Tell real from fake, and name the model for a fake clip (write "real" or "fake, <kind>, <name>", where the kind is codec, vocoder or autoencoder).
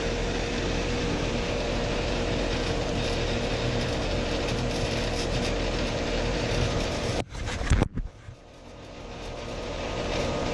fake, vocoder, BigVGAN v2